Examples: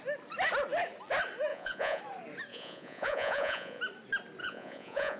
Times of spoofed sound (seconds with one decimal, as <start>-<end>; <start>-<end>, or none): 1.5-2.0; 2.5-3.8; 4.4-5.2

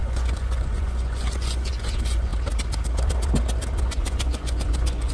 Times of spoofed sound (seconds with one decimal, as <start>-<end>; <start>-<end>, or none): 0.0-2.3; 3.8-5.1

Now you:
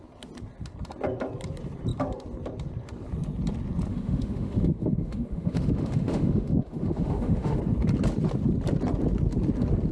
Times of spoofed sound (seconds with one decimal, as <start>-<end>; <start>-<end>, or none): 3.9-7.6

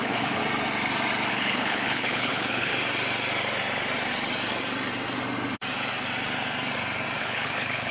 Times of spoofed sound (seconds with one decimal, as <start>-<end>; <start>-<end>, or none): 0.0-0.4; 1.3-2.7; 7.2-7.9

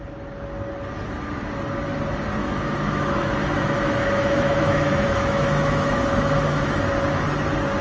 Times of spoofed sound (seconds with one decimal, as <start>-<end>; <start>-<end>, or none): 2.4-6.8

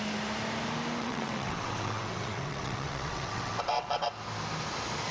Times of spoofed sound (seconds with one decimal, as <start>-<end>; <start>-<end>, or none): 1.0-4.1

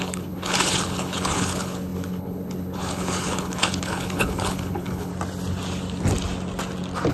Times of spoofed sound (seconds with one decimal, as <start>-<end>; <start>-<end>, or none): 0.0-5.1

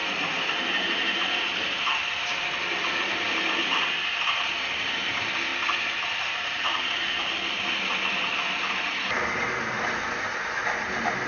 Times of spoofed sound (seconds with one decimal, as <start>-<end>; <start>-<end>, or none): 5.5-10.3